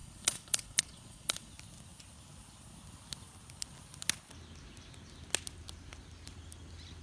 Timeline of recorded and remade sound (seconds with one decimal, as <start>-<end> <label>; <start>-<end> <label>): 0.0-1.5 remade; 1.5-7.0 recorded